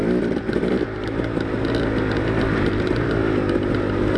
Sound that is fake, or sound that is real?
real